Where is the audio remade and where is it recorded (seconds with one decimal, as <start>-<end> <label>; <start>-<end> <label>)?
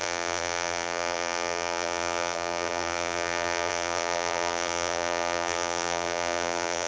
0.0-6.9 remade